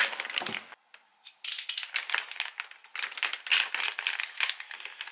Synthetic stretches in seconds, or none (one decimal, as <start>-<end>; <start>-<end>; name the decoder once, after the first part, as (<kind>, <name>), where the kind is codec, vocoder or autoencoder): none